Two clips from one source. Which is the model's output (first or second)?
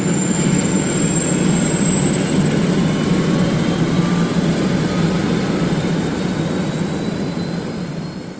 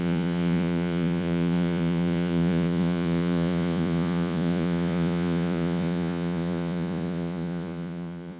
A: second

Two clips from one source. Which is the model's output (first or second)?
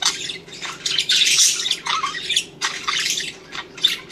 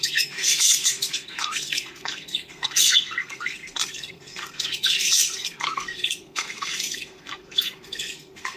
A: second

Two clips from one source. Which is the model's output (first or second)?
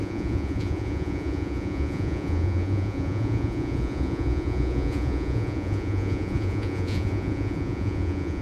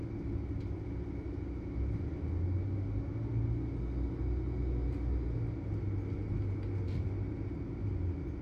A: first